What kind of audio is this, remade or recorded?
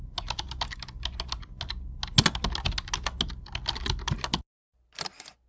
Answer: recorded